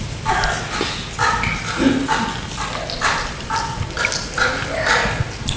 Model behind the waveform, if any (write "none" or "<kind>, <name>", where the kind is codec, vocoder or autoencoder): none